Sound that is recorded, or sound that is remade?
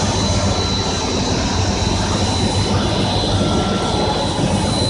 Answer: recorded